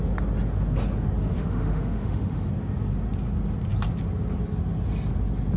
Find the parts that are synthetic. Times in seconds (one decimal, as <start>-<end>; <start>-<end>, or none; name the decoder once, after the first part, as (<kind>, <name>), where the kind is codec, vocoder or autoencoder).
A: 1.3-2.5 (autoencoder, DAC-VAE)